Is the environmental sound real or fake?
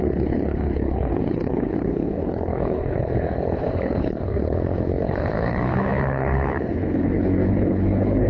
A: fake